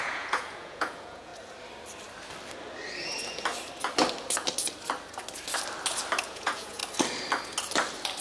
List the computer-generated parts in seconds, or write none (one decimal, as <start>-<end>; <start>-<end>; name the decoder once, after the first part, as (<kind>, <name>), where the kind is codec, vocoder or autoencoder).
0.0-1.3 (vocoder, Vocos); 6.2-6.8